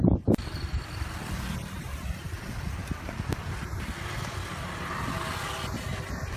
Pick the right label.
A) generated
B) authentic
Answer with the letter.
B